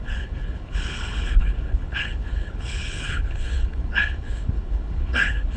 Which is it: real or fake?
fake